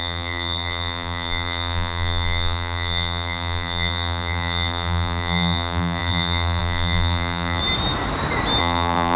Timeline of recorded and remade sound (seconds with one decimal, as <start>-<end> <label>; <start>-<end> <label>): 0.0-7.6 remade; 7.6-8.6 recorded; 8.6-9.2 remade